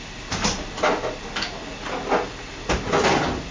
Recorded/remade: recorded